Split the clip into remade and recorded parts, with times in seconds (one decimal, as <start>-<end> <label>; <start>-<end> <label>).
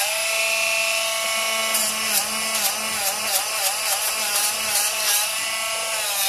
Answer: 0.0-6.3 recorded